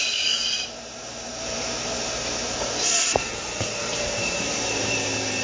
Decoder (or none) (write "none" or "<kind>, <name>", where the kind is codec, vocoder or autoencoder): vocoder, BigVGAN v2